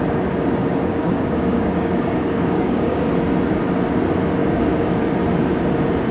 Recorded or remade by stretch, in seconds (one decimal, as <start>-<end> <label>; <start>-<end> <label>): 0.0-0.6 recorded; 0.6-3.1 remade; 3.1-4.4 recorded; 4.4-5.0 remade; 5.0-6.1 recorded